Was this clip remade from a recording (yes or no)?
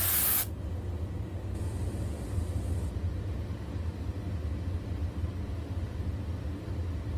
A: no